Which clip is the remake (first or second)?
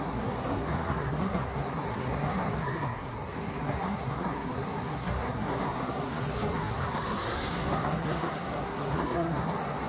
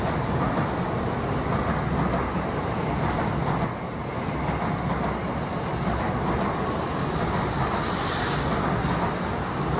first